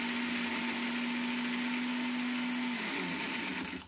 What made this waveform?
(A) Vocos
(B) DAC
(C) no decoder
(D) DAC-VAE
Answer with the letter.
C